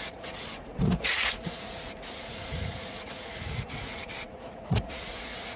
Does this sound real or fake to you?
fake